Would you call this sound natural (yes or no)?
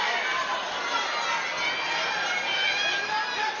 yes